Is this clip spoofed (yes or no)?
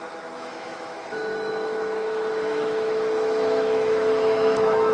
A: yes